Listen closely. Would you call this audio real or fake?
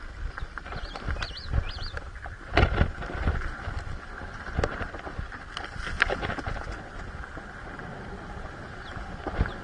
real